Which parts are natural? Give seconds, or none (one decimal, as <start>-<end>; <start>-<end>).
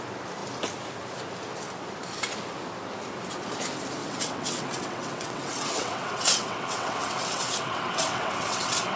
0.0-4.0